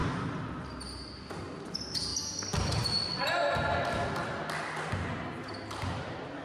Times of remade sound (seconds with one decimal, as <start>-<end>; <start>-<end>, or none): none

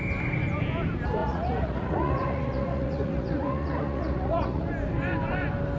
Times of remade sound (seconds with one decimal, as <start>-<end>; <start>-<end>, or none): 1.2-4.7

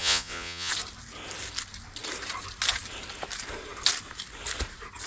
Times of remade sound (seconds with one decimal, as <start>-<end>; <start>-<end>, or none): 0.0-0.7

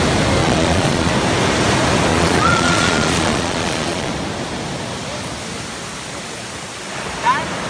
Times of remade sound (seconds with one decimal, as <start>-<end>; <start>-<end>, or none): 0.4-1.1; 2.1-4.1

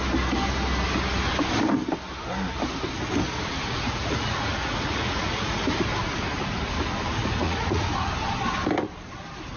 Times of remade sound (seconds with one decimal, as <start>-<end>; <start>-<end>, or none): 3.5-5.8; 7.4-8.1

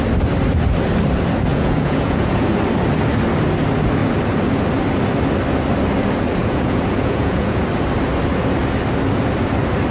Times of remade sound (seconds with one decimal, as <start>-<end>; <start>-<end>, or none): 1.5-2.5; 6.4-7.6

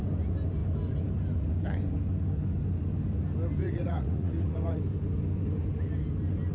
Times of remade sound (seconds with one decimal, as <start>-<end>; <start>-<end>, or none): 3.6-4.8

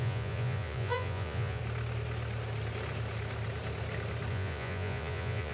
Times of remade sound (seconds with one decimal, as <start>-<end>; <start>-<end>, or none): 0.0-1.6; 4.3-5.5